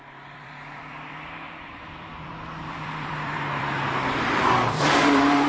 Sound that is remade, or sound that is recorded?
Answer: remade